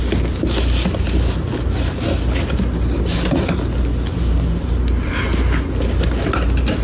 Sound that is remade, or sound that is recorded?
recorded